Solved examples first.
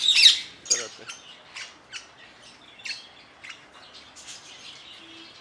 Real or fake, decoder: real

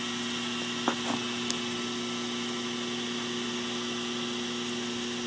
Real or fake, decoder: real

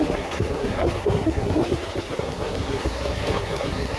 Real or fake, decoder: fake, codec, SNAC